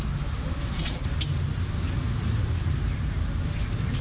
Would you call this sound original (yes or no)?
yes